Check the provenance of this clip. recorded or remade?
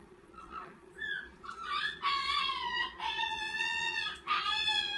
remade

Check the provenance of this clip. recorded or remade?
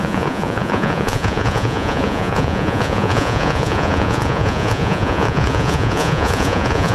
remade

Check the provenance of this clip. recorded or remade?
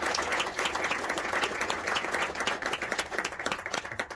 remade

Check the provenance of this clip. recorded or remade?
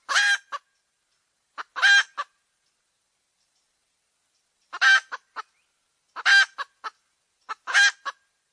recorded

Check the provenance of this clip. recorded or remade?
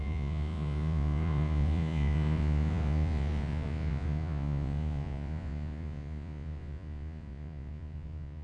remade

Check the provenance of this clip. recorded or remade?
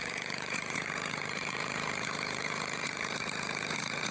remade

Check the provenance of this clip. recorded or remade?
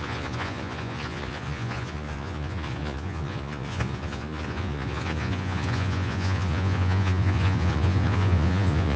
remade